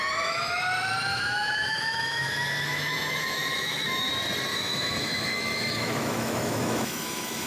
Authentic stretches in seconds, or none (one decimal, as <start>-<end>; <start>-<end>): 0.6-1.1; 4.1-4.5